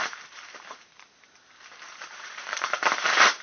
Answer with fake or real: fake